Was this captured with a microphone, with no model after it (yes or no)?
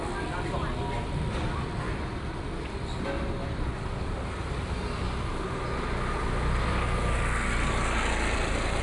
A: yes